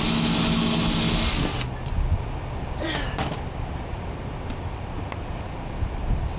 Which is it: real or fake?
real